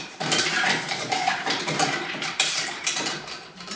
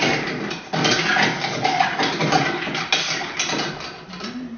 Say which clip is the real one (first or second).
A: second